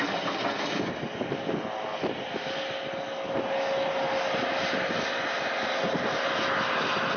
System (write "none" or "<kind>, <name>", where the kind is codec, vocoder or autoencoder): none